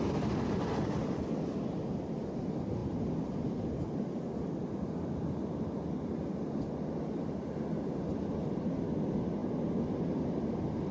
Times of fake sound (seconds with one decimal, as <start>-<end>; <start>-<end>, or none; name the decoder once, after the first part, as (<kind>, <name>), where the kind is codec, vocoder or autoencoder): none